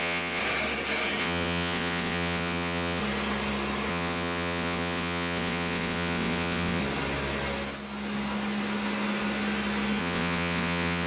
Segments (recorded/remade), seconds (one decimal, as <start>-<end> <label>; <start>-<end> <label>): 0.0-0.4 remade; 0.4-1.2 recorded; 1.2-3.0 remade; 3.0-3.9 recorded; 3.9-6.8 remade; 6.8-10.0 recorded; 10.0-11.1 remade